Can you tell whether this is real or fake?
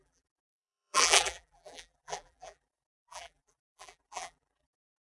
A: fake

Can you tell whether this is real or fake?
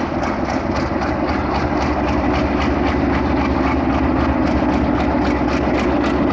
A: real